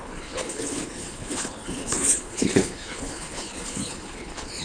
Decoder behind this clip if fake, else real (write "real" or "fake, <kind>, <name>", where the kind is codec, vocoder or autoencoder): fake, codec, HILCodec